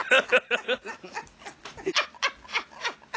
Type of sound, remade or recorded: recorded